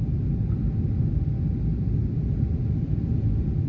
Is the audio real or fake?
real